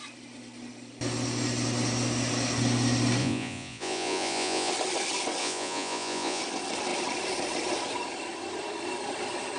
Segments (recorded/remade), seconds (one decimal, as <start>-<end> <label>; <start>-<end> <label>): 0.0-3.2 recorded; 3.2-4.7 remade; 4.7-5.4 recorded; 5.4-6.4 remade; 6.4-9.6 recorded